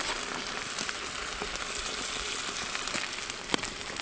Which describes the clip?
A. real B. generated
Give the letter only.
B